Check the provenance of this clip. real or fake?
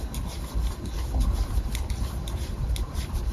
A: fake